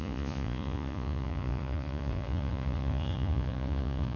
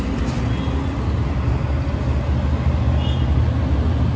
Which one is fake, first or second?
first